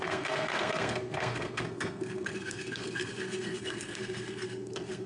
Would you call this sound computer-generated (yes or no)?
yes